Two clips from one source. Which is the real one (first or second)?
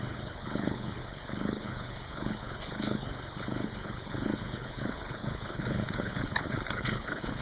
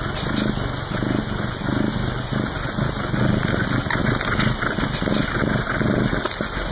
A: second